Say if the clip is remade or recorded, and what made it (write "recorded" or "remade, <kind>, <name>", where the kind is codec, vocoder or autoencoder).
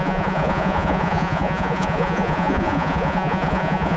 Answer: remade, vocoder, Vocos